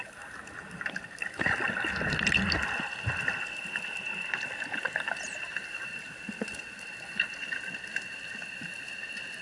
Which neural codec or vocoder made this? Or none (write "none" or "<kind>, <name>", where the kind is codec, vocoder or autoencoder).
none